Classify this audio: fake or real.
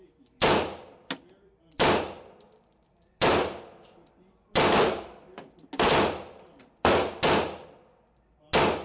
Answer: real